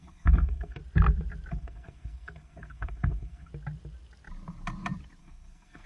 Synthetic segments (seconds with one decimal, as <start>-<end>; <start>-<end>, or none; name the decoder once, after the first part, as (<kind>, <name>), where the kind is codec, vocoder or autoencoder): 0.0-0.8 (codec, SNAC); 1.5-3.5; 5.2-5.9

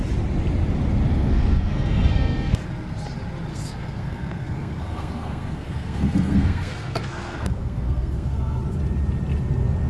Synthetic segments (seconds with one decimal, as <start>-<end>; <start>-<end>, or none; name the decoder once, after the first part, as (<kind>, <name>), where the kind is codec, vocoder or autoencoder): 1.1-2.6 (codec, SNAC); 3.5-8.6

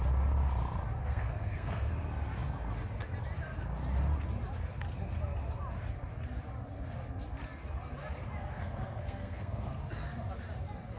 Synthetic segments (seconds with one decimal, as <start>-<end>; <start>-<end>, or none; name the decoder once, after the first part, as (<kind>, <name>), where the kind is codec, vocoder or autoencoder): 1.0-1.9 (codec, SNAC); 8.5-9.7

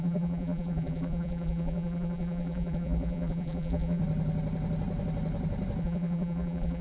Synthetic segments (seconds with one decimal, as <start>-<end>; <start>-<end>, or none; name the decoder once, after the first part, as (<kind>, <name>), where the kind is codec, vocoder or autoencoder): 0.0-4.0 (vocoder, BigVGAN v2); 5.8-6.8

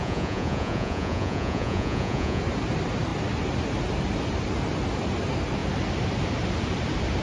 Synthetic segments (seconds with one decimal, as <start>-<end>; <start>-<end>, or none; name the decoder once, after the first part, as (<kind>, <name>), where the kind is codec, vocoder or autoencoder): 0.0-2.4 (vocoder, Vocos)